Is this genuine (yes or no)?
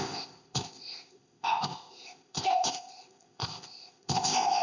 no